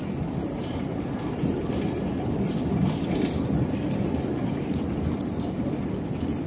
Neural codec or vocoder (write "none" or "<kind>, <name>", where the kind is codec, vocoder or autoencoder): none